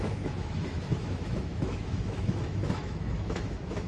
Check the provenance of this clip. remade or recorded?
remade